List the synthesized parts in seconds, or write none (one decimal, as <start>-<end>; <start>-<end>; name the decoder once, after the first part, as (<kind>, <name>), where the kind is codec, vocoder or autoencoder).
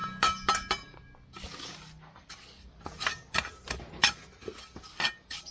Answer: none